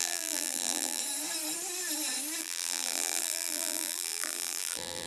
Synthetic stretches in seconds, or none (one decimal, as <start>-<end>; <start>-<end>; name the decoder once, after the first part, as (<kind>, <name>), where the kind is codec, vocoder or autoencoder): 0.0-1.0 (vocoder, BigVGAN v2); 2.4-5.1